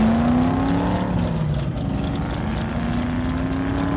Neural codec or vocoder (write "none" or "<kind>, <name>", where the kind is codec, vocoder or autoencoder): none